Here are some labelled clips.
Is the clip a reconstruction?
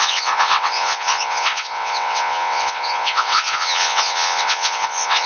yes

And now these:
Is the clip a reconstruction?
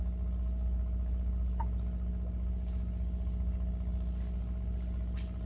no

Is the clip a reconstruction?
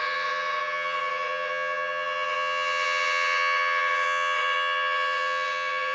yes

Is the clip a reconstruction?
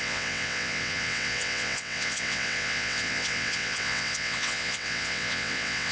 yes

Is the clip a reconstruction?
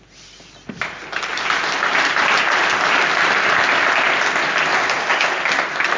no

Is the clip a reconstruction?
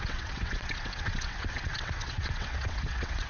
yes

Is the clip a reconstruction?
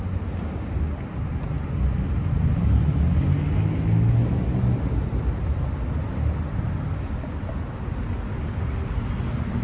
no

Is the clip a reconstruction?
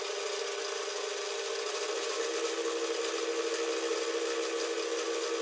no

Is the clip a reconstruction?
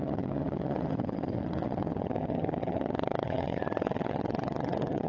yes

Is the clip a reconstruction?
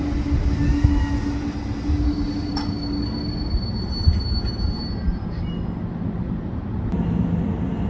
no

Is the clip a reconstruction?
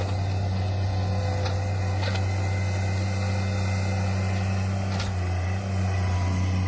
no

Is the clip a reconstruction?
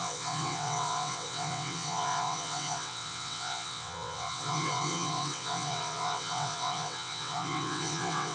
yes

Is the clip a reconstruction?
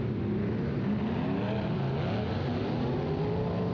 no